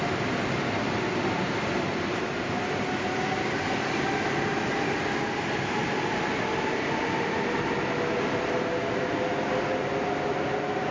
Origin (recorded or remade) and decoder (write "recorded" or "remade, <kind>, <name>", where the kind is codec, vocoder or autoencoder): recorded